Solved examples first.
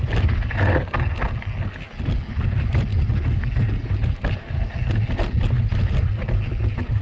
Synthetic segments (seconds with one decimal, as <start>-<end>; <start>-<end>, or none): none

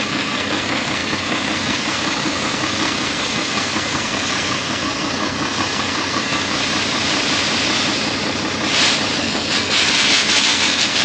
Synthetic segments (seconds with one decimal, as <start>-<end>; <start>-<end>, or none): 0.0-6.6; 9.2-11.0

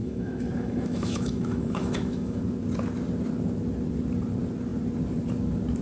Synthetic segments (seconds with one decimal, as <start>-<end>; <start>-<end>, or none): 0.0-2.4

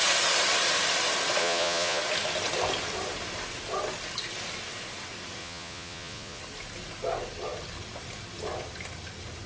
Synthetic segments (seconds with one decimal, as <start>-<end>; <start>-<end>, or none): 1.4-2.0; 5.4-6.4

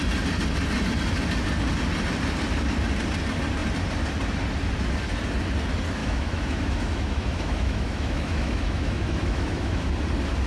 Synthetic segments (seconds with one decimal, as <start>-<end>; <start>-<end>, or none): 6.0-9.9